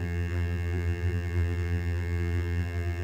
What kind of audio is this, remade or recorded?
remade